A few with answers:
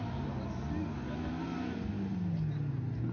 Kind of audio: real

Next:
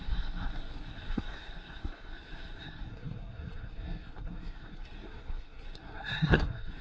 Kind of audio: fake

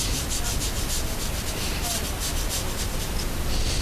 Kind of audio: real